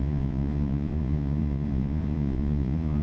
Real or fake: fake